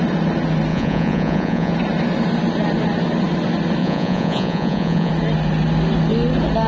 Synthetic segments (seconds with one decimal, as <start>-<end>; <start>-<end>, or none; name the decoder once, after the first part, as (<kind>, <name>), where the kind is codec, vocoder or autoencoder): 0.7-1.7 (vocoder, Vocos); 3.8-5.1